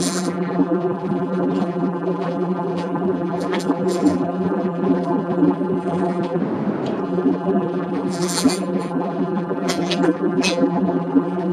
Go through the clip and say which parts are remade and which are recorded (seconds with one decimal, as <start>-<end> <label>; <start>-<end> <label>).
0.0-6.4 remade; 6.4-7.0 recorded; 7.0-11.5 remade